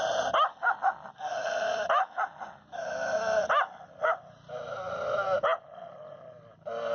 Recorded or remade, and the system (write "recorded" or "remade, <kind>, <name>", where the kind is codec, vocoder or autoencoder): recorded